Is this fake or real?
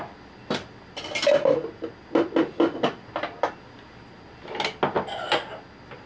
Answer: real